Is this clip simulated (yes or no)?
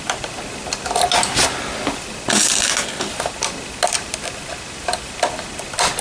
no